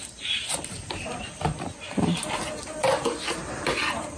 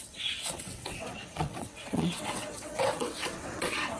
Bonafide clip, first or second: first